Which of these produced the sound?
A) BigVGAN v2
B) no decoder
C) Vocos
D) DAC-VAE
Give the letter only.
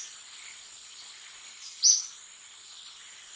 B